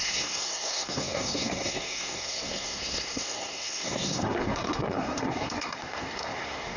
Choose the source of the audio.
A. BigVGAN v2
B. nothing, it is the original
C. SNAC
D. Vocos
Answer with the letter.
C